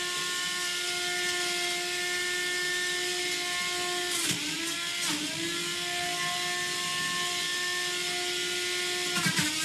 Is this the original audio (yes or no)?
yes